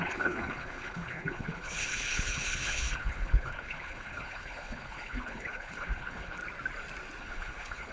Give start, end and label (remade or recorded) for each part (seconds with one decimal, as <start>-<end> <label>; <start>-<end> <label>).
0.0-6.4 remade; 6.4-7.2 recorded; 7.2-7.9 remade